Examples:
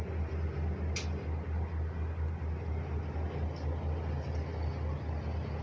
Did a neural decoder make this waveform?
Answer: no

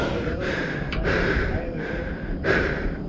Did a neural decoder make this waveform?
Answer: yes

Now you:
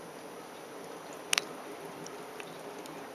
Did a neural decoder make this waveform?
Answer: no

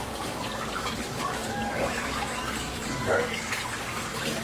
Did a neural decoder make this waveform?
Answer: yes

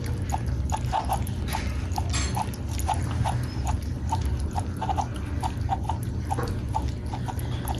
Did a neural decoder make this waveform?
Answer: no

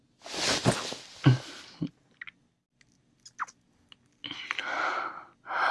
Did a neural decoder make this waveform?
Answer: no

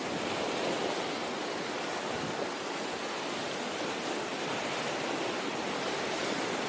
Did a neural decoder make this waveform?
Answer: no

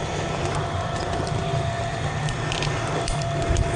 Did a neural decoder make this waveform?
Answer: yes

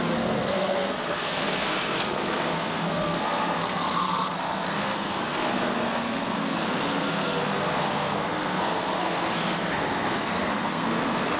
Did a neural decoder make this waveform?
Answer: yes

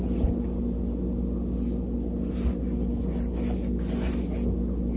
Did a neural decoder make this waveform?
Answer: no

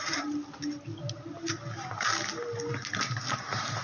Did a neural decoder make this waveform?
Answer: no